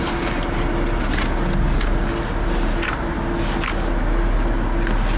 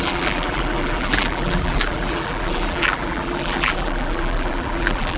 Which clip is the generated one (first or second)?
second